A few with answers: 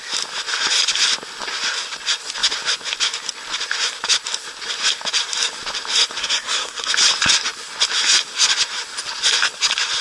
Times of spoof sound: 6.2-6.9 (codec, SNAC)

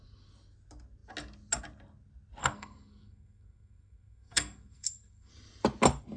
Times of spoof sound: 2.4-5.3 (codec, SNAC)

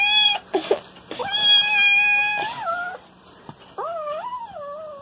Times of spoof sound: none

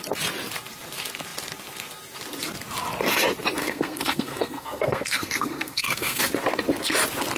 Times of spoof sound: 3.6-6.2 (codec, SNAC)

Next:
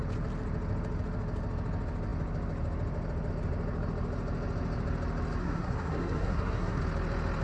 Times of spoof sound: 5.4-6.8 (codec, SNAC)

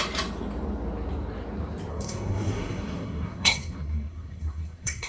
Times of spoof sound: 1.9-5.1 (codec, SNAC)